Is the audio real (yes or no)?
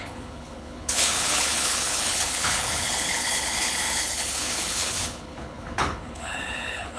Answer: no